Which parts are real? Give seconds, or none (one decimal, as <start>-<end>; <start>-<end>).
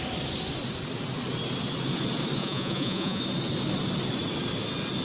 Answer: 0.0-2.4; 3.2-5.0